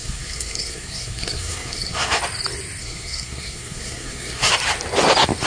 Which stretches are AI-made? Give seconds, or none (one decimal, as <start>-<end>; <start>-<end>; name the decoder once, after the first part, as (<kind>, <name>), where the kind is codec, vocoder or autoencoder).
0.0-2.2 (codec, SNAC); 2.8-4.5